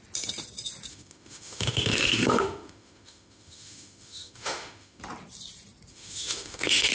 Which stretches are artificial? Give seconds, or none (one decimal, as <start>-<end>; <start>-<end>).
0.9-5.0; 5.9-6.9